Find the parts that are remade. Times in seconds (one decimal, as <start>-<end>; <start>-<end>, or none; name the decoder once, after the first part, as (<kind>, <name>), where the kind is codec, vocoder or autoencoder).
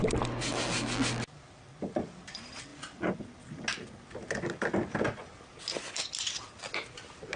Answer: none